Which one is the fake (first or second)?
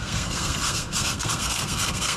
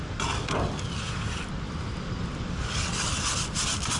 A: first